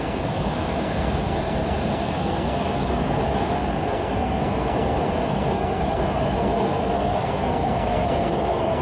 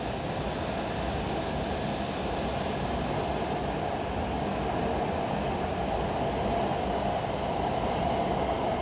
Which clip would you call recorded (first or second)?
second